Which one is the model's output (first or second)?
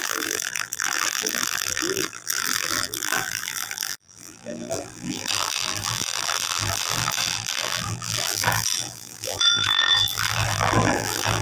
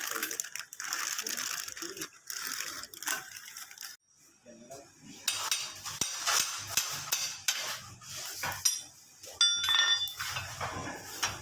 first